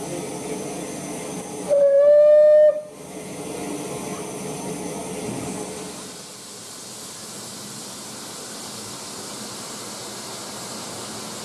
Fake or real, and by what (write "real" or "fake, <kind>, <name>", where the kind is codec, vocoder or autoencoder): real